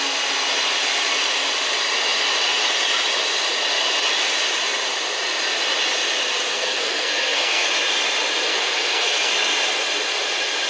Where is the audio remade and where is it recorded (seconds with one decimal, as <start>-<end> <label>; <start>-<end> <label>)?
0.0-6.5 recorded; 6.5-7.7 remade; 7.7-8.5 recorded; 8.5-9.3 remade; 9.3-10.7 recorded